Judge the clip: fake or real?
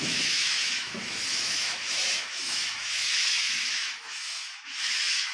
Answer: fake